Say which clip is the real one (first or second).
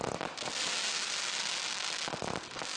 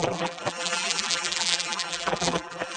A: first